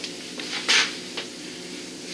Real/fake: real